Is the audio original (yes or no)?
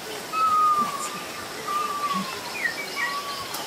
yes